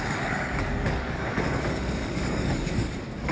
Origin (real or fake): fake